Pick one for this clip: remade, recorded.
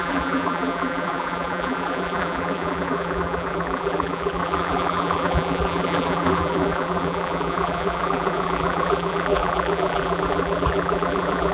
remade